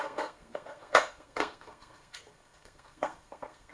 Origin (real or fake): fake